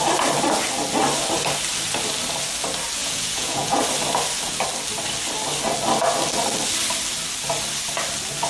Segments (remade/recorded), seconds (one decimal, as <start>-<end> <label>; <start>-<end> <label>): 0.0-3.0 recorded; 3.0-3.8 remade; 3.8-8.5 recorded

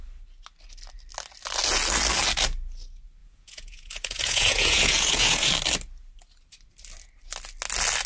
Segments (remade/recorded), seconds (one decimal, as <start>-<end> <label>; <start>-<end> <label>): 0.0-3.2 recorded; 3.2-5.5 remade; 5.5-8.1 recorded

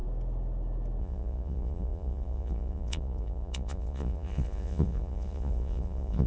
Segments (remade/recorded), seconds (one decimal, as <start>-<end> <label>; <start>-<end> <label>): 0.0-1.0 recorded; 1.0-6.3 remade

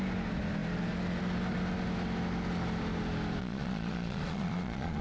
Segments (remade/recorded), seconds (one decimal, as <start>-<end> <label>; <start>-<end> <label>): 0.0-3.4 recorded; 3.4-5.0 remade

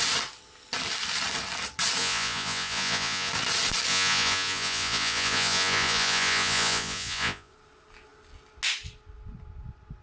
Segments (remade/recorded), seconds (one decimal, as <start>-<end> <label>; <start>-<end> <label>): 0.0-2.0 recorded; 2.0-3.3 remade; 3.3-3.9 recorded; 3.9-7.5 remade; 7.5-10.0 recorded